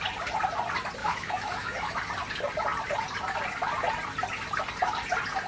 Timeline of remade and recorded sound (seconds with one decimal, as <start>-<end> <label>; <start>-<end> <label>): 0.0-1.0 recorded; 1.0-2.0 remade; 2.0-5.5 recorded